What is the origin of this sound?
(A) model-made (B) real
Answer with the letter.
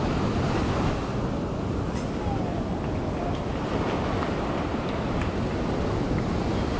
B